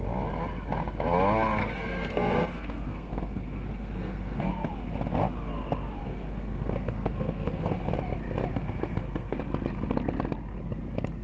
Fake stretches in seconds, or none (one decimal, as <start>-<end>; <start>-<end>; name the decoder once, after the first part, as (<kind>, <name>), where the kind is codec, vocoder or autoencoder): 1.6-4.7 (codec, SNAC); 6.0-7.9; 8.5-9.4